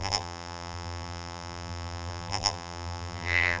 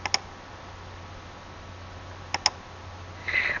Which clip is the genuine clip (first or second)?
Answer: second